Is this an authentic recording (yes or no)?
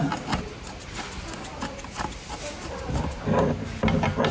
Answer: yes